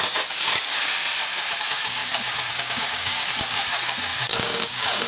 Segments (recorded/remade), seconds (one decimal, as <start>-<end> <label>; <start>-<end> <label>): 0.0-0.9 remade; 0.9-1.6 recorded; 1.6-5.1 remade